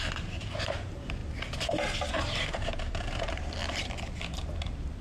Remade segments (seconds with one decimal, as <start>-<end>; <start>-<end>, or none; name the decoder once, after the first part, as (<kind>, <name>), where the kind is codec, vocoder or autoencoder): 0.0-1.2 (vocoder, BigVGAN v2); 2.1-3.6; 4.3-5.0